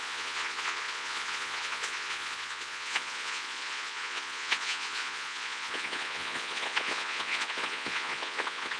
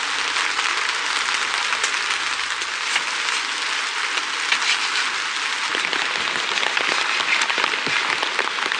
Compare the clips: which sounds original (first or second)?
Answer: second